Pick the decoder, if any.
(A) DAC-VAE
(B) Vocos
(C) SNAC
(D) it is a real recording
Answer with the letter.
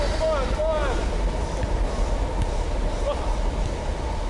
D